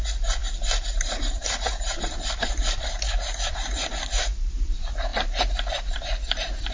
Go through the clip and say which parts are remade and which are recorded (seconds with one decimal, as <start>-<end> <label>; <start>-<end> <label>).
0.0-6.7 remade